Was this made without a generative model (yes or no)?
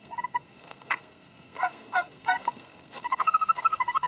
no